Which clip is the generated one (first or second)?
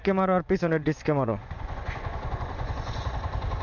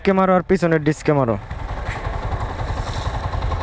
first